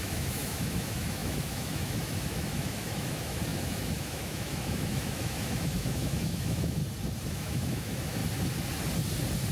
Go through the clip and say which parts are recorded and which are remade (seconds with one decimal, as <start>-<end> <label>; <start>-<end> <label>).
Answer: 0.0-6.8 remade; 6.8-7.3 recorded; 7.3-8.2 remade; 8.2-9.5 recorded